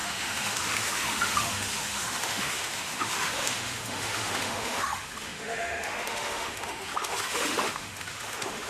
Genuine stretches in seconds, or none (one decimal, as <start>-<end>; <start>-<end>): none